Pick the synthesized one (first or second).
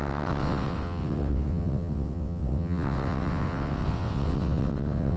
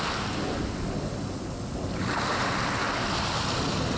first